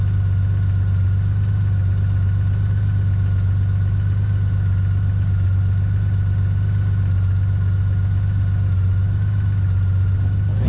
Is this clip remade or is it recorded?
recorded